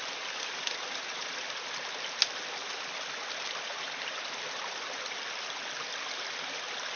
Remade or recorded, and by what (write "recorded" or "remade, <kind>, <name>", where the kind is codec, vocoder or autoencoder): recorded